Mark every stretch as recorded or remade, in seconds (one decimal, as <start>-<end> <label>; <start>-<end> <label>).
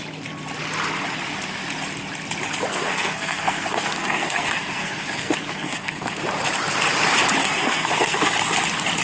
0.0-2.7 recorded; 2.7-6.2 remade; 6.2-7.4 recorded; 7.4-8.2 remade; 8.2-9.0 recorded